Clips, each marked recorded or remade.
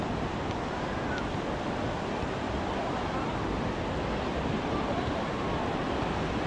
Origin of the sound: recorded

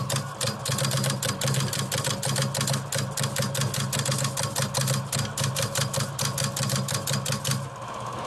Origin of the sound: recorded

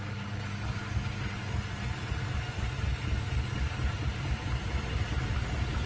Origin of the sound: recorded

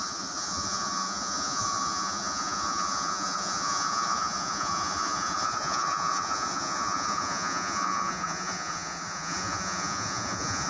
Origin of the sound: remade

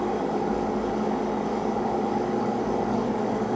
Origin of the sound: remade